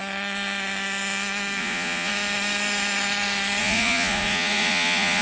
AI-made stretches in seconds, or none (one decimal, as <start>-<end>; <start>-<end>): 1.6-2.1; 3.6-5.2